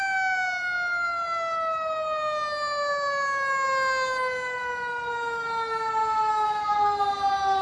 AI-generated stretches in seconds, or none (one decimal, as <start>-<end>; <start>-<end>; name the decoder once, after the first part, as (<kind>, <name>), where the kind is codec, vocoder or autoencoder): 6.0-7.0 (autoencoder, DAC-VAE)